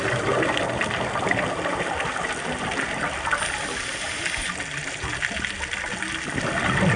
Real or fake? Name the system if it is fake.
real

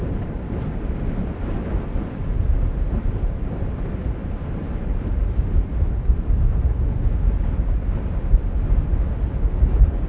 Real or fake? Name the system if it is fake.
real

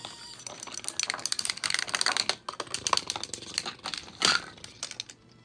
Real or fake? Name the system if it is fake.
real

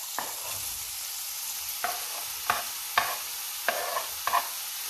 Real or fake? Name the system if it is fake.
real